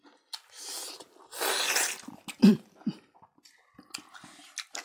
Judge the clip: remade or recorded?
recorded